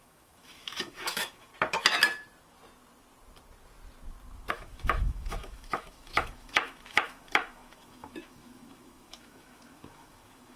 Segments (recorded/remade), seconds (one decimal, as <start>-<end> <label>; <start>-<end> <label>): 0.0-1.5 remade; 1.5-4.5 recorded; 4.5-10.6 remade